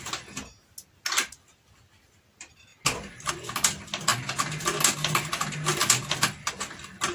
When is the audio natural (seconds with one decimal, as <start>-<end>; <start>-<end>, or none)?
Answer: 0.0-7.1